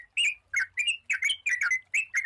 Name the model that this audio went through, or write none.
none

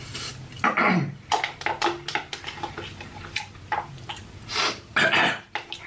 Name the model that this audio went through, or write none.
none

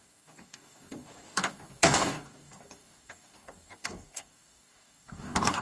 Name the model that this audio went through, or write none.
codec, DAC